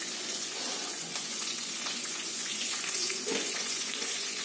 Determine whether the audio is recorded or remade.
remade